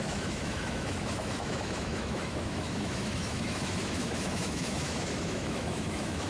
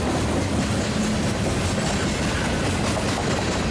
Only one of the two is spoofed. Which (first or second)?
first